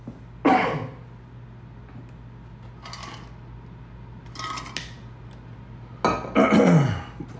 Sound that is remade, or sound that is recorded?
recorded